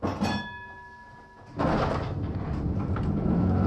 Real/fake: real